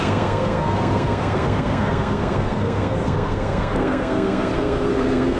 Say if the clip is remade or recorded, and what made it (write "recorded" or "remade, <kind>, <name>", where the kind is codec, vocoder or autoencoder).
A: remade, codec, SNAC